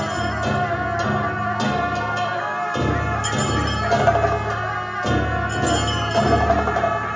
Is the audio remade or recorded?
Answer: recorded